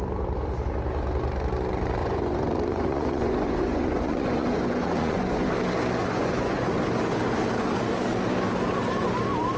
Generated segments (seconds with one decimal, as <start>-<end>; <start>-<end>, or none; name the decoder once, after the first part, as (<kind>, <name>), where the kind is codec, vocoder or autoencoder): 2.0-5.5 (vocoder, Vocos); 6.0-6.8